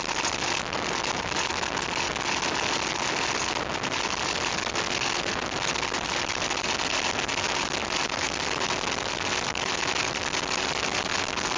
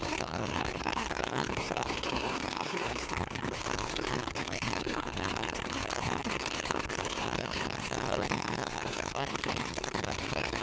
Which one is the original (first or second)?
first